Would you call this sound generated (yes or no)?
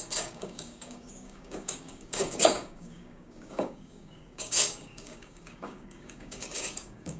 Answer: yes